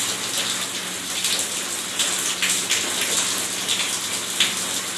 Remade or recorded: recorded